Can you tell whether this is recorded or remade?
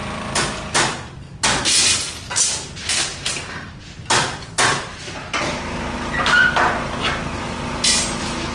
recorded